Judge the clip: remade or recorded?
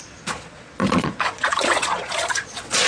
remade